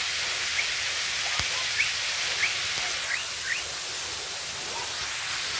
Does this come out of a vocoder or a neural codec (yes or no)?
no